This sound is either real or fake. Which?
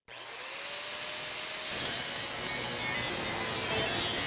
real